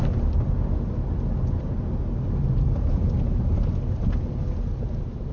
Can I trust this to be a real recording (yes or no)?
yes